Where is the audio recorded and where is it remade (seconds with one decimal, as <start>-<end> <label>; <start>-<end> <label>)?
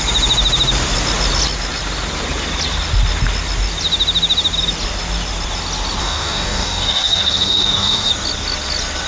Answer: 0.0-6.0 recorded; 6.0-8.1 remade; 8.1-9.1 recorded